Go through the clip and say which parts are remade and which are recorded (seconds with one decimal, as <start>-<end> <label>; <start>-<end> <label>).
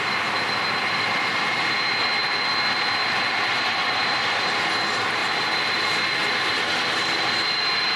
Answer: 0.0-5.2 recorded; 5.2-5.8 remade; 5.8-6.2 recorded; 6.2-6.7 remade; 6.7-8.0 recorded